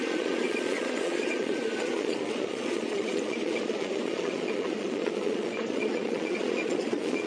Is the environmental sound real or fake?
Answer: fake